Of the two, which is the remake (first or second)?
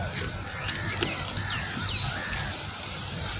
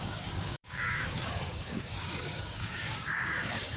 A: second